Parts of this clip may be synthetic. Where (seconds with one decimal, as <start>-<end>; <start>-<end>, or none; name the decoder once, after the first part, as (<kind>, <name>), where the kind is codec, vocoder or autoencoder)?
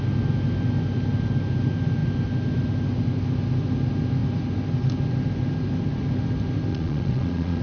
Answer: 6.7-7.6 (vocoder, Vocos)